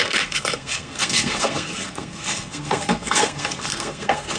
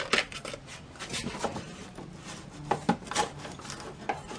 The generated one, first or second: first